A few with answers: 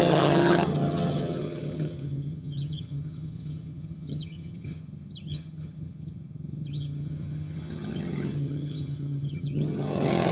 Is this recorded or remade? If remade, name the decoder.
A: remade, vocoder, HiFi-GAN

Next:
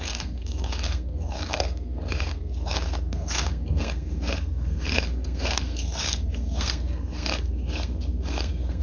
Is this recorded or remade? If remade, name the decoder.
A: remade, codec, SNAC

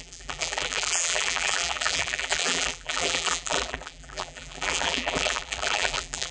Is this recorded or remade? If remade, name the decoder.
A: remade, vocoder, BigVGAN v2